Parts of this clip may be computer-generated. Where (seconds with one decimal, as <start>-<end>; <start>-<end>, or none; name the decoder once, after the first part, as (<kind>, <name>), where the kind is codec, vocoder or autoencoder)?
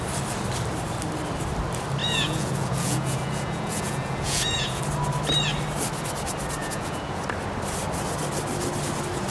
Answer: 2.0-4.8 (vocoder, Vocos); 6.6-7.2